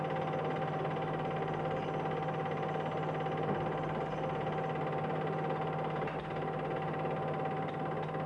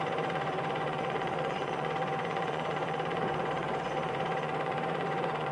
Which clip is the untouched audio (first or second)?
first